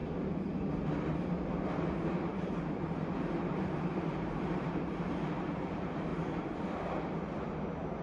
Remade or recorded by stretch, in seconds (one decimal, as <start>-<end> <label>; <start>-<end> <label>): 0.0-1.7 recorded; 1.7-6.1 remade; 6.1-7.4 recorded; 7.4-8.0 remade